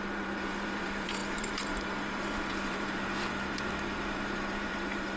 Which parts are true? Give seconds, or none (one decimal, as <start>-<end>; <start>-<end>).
none